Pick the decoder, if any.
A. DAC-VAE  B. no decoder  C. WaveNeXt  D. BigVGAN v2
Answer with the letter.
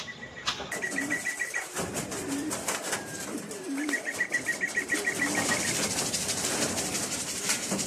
D